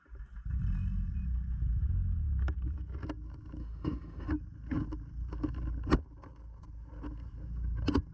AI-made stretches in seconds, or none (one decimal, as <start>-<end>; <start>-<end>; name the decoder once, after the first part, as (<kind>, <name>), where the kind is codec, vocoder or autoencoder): 3.6-4.3 (autoencoder, DAC-VAE)